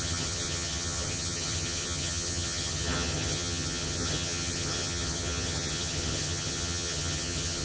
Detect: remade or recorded remade